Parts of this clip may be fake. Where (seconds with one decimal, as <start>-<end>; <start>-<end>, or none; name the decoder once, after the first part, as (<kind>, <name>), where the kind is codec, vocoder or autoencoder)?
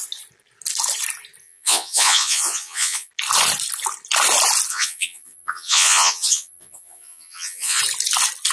1.4-3.1 (vocoder, Vocos); 4.7-7.8